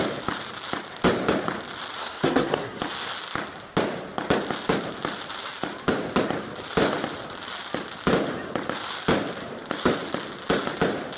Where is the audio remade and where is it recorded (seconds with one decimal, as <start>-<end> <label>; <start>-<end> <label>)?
0.0-2.0 recorded; 2.0-2.8 remade; 2.8-11.2 recorded